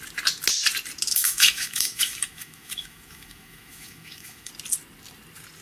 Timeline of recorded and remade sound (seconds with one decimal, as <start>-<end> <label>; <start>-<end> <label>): 0.0-1.1 recorded; 1.1-4.5 remade; 4.5-5.6 recorded